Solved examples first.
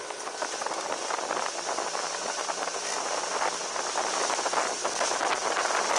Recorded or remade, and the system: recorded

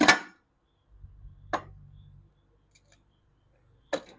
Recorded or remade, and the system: recorded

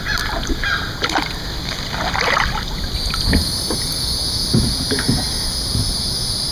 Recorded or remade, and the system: recorded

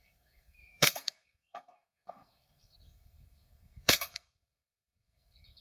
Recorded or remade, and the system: remade, codec, SNAC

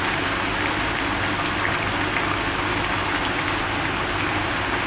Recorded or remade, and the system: recorded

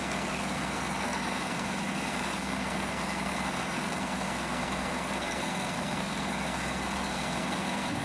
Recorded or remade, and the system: remade, codec, SNAC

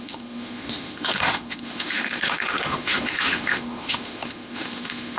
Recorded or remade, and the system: remade, autoencoder, DAC-VAE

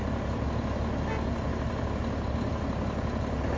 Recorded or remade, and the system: recorded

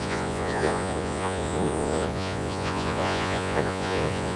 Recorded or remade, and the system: remade, vocoder, Vocos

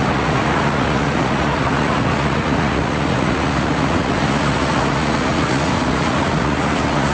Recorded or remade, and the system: remade, vocoder, Vocos